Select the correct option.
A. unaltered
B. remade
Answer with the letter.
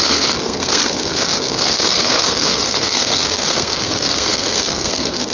B